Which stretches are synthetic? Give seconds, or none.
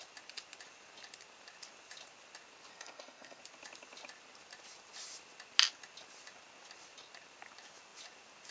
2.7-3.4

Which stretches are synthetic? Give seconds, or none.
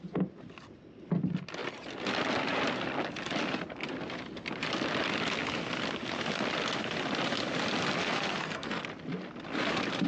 8.0-8.8